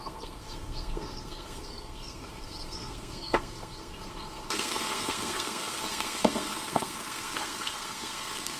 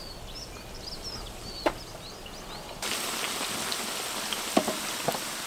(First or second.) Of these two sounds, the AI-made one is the first